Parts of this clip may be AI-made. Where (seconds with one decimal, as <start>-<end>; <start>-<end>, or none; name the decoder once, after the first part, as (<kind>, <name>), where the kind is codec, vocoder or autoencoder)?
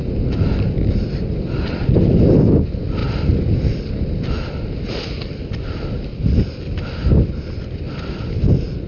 none